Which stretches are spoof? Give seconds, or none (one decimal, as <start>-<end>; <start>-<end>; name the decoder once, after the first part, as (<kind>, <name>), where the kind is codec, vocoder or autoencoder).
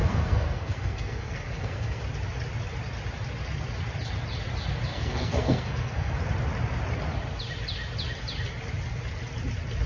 0.0-2.0 (codec, SNAC); 4.9-6.2